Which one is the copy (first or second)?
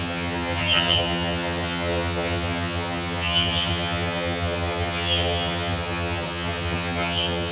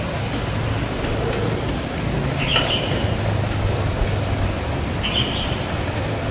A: first